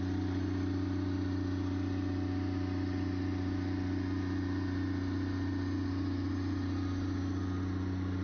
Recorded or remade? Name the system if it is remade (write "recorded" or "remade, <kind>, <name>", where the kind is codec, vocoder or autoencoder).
recorded